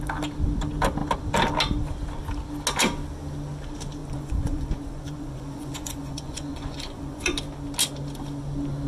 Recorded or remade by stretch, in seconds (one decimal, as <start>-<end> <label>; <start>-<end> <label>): 0.0-4.0 recorded; 4.0-7.2 remade; 7.2-8.9 recorded